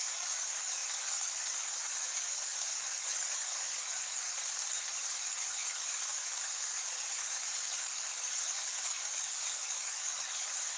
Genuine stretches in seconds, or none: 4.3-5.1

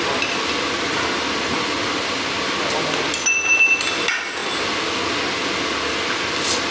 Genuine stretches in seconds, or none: 0.0-6.7